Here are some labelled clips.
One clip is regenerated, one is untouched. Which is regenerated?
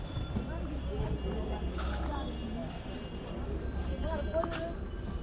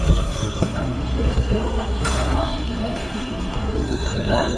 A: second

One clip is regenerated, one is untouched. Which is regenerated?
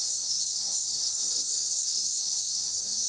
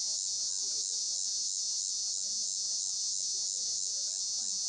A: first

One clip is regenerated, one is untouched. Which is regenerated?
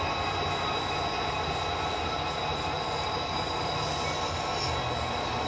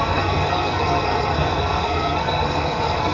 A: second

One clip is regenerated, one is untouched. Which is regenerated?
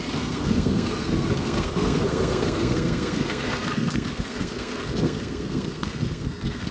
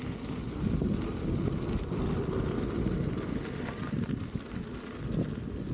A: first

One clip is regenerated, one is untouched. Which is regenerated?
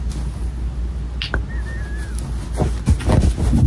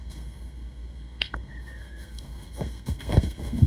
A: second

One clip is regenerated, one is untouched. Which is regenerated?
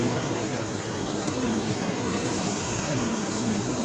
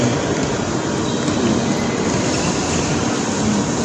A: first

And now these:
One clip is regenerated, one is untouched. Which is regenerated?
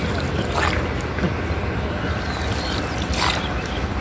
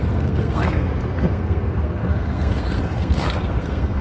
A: second